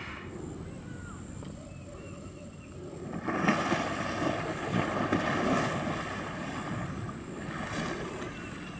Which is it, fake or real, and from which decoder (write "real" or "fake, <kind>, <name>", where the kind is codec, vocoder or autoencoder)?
real